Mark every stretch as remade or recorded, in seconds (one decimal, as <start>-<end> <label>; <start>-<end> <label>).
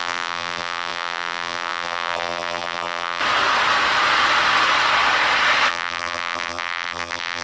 0.0-3.2 remade; 3.2-5.7 recorded; 5.7-7.4 remade